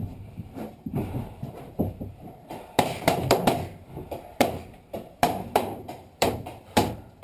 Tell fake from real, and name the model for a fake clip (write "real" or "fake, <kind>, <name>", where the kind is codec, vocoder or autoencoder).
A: fake, vocoder, BigVGAN v2